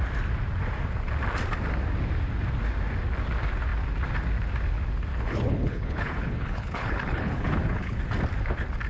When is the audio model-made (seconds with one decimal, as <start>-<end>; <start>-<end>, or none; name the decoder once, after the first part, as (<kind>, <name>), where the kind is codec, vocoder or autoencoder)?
5.1-8.0 (codec, HILCodec)